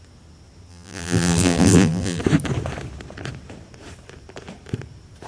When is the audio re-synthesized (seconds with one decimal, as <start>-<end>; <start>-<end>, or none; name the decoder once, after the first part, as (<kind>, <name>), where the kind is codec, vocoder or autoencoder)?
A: 0.7-2.2 (vocoder, BigVGAN v2)

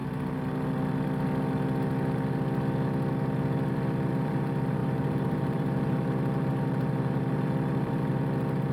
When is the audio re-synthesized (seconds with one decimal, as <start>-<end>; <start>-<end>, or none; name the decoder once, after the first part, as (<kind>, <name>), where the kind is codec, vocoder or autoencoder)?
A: 4.1-8.7 (vocoder, BigVGAN v2)

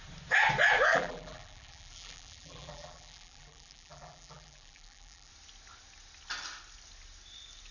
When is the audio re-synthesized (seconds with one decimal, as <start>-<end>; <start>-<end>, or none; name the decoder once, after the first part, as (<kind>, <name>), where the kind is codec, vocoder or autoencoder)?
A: 0.9-5.3 (vocoder, BigVGAN v2)

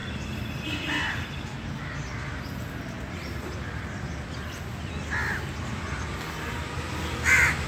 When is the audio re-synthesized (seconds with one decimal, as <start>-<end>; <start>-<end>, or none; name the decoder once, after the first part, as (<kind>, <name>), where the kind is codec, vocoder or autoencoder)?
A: none

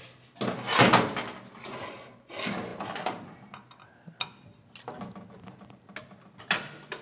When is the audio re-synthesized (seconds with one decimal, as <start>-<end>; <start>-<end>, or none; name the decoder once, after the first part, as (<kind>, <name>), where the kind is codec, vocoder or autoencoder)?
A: none

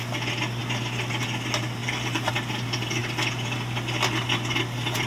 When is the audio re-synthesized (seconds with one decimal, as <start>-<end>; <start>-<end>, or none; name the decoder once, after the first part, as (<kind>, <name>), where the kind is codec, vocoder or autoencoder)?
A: 1.8-2.3 (vocoder, BigVGAN v2)

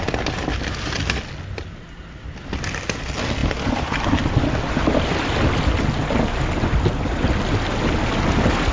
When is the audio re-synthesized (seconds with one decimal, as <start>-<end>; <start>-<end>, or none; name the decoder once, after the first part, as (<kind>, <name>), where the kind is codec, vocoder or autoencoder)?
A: 3.4-4.4 (vocoder, BigVGAN v2)

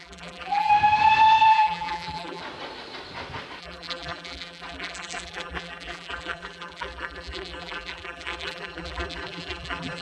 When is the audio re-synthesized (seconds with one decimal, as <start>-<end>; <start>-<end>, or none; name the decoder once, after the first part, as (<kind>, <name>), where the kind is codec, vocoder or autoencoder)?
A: 0.0-0.7 (vocoder, BigVGAN v2); 1.5-2.4; 3.6-10.0